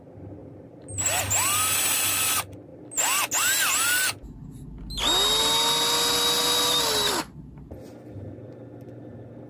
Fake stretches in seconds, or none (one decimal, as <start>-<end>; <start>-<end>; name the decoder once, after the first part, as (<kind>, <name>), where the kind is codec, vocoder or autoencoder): none